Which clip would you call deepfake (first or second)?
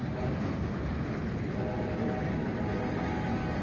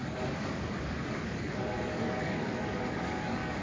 second